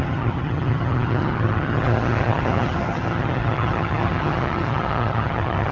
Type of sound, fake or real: fake